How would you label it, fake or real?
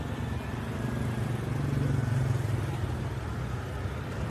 real